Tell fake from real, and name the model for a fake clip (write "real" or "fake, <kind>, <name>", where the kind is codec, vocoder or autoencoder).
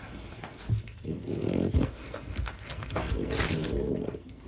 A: fake, codec, SNAC